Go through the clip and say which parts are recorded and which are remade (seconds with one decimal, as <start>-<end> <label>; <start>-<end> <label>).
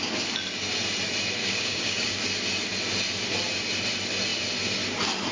0.0-1.4 recorded; 1.4-2.2 remade; 2.2-5.3 recorded